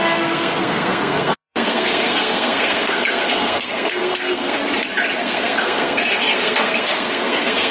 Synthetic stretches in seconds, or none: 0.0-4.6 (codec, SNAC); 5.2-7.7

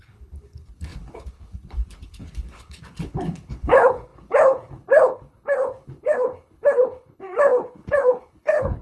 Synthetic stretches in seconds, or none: 0.0-8.8 (codec, HILCodec)